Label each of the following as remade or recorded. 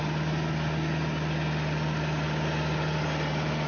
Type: recorded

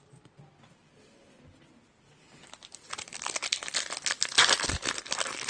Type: recorded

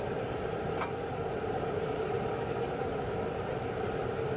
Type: recorded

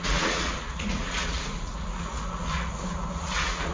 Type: remade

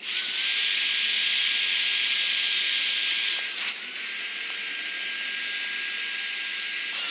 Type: recorded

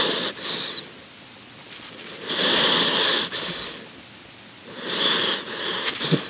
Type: recorded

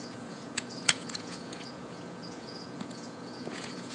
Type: remade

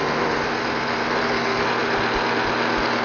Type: recorded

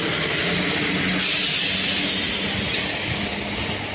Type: recorded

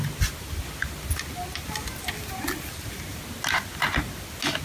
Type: recorded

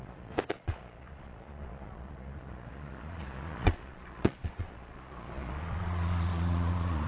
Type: remade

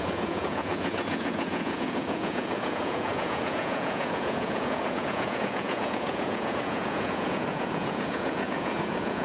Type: remade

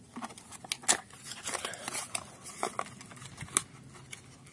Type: recorded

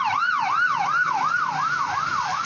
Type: recorded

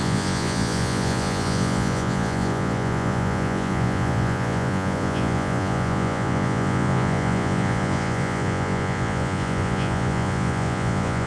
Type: remade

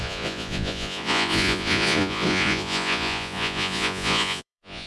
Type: remade